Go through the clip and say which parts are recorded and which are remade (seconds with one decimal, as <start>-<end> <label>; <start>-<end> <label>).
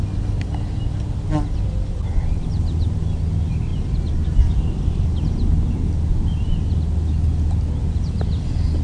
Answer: 0.0-8.8 recorded